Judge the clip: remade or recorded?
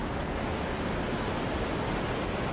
recorded